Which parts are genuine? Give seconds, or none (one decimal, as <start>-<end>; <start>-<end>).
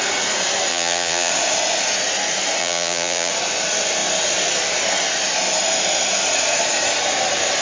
0.0-0.7; 1.3-2.6; 3.3-7.6